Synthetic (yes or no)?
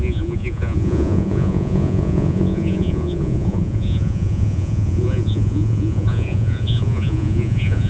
yes